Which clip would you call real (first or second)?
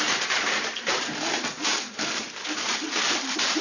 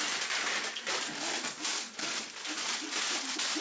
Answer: second